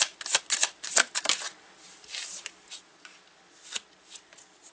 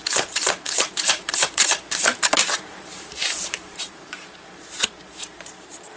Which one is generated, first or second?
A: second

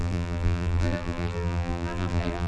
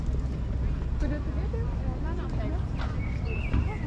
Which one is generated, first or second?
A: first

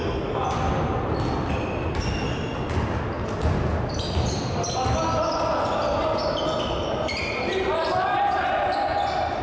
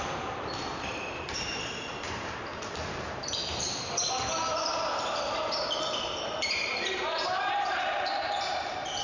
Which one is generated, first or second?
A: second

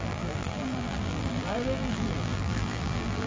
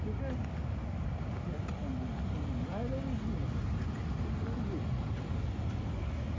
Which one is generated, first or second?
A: first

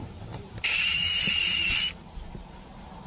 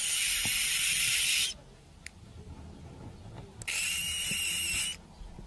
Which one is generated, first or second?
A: first